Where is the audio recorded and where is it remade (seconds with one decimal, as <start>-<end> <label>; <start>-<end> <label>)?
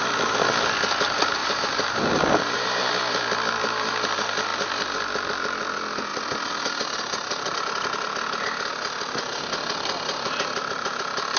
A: 0.0-1.4 recorded; 1.4-2.9 remade; 2.9-11.4 recorded